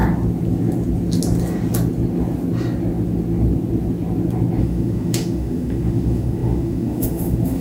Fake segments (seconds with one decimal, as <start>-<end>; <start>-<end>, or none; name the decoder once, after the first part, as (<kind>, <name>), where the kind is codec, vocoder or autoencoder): 4.6-7.6 (autoencoder, DAC-VAE)